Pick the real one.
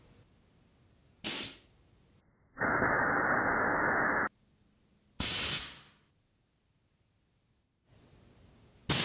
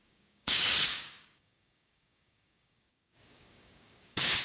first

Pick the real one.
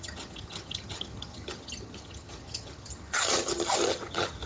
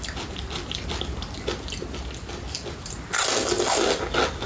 second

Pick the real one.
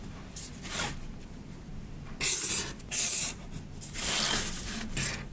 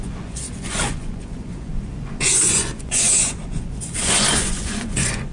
first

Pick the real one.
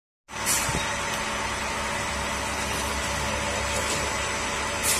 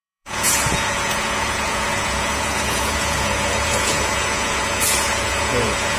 first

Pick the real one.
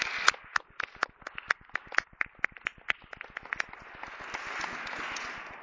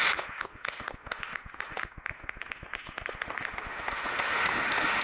first